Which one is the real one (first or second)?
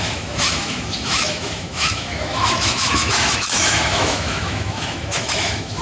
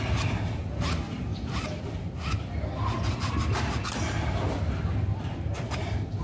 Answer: second